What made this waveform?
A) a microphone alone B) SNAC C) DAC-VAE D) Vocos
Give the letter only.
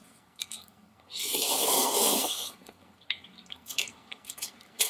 B